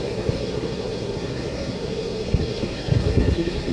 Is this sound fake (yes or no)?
yes